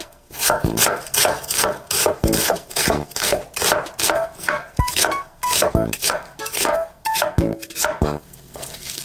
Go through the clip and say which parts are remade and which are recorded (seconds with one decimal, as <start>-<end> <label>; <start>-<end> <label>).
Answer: 0.0-3.4 remade; 3.4-4.0 recorded; 4.0-9.0 remade